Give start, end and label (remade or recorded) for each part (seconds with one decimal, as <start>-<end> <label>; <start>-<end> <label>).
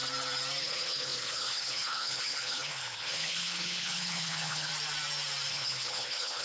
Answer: 0.0-0.6 recorded; 0.6-4.7 remade; 4.7-5.5 recorded; 5.5-6.4 remade